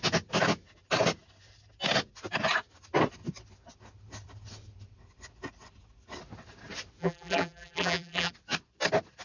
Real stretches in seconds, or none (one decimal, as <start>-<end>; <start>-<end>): 0.0-7.0; 8.3-9.2